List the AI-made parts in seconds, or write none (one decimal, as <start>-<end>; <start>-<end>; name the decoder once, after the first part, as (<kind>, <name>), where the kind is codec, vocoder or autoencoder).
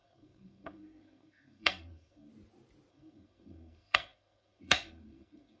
0.0-2.3 (codec, SNAC); 2.9-5.6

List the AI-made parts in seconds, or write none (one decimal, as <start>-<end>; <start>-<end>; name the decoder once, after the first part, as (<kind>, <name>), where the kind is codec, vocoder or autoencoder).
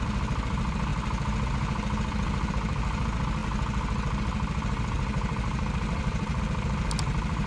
none